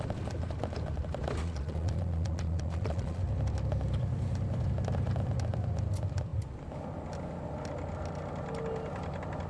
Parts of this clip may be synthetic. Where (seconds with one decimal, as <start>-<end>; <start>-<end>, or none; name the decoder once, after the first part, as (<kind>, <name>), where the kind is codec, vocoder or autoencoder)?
1.4-3.2 (vocoder, Vocos)